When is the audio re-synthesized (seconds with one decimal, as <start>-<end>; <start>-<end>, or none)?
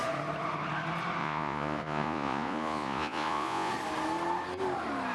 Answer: 1.2-3.7